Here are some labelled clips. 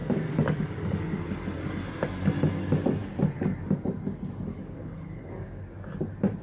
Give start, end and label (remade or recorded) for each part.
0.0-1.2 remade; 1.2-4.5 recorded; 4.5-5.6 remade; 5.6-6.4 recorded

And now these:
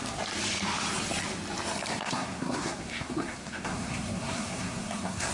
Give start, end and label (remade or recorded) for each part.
0.0-1.9 recorded; 1.9-5.3 remade

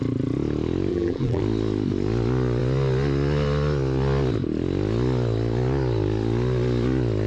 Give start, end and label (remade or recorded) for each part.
0.0-0.9 recorded; 0.9-1.4 remade; 1.4-7.3 recorded